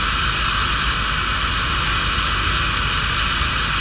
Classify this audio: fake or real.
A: real